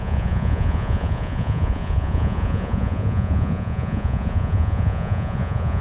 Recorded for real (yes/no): no